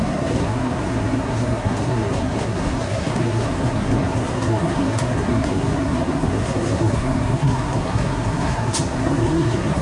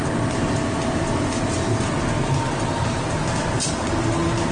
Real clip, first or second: second